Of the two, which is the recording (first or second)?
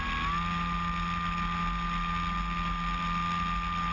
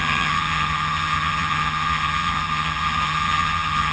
first